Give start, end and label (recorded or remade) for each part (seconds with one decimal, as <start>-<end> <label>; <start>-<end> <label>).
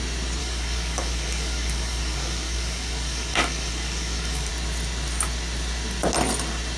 0.0-0.4 recorded; 0.4-4.5 remade; 4.5-6.8 recorded